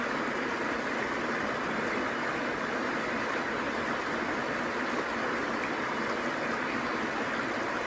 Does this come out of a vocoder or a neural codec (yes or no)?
yes